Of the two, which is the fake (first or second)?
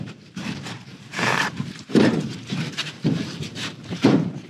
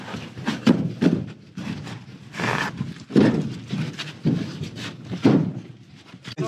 first